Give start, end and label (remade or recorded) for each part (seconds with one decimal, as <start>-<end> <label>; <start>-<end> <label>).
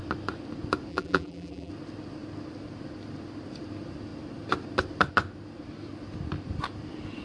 0.0-0.9 recorded; 0.9-1.7 remade; 1.7-7.2 recorded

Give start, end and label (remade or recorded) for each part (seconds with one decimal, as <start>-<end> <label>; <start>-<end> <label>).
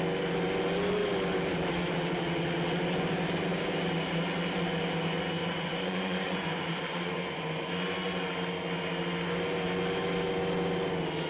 0.0-5.4 recorded; 5.4-7.7 remade; 7.7-11.3 recorded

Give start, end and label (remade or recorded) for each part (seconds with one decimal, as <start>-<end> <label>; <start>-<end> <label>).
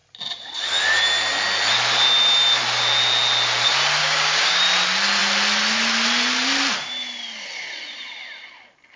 0.0-4.0 recorded; 4.0-4.6 remade; 4.6-9.0 recorded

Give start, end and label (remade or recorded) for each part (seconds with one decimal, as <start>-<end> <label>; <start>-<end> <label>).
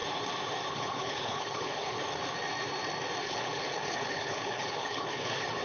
0.0-0.7 recorded; 0.7-2.0 remade; 2.0-3.2 recorded; 3.2-5.6 remade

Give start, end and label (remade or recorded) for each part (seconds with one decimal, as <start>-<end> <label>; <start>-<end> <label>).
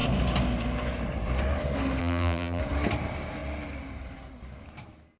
0.0-2.0 recorded; 2.0-2.6 remade; 2.6-5.2 recorded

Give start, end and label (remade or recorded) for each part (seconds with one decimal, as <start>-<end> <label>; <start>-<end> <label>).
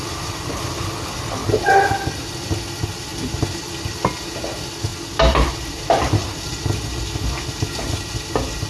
0.0-8.7 recorded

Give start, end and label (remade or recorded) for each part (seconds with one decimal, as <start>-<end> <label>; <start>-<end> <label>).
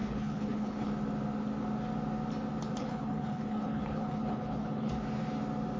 0.0-0.9 remade; 0.9-2.8 recorded; 2.8-4.9 remade; 4.9-5.8 recorded